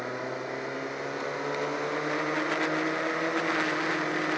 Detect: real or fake real